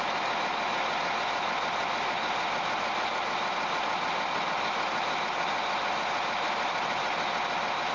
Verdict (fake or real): real